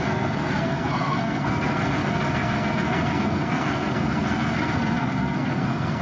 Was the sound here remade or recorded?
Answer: remade